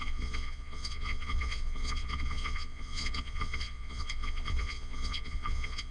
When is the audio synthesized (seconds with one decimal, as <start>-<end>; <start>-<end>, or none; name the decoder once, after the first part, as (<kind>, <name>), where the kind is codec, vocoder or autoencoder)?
0.0-5.9 (vocoder, Vocos)